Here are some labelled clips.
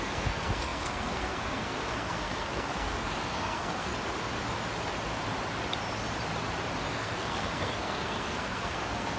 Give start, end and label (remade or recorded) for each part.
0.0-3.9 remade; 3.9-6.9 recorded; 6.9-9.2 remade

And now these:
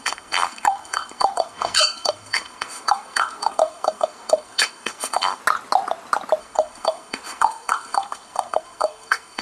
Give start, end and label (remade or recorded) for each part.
0.0-5.4 remade; 5.4-6.4 recorded; 6.4-9.4 remade